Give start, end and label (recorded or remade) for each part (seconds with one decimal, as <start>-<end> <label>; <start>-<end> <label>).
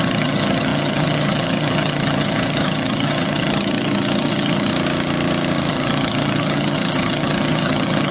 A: 0.0-4.7 remade; 4.7-5.7 recorded; 5.7-8.1 remade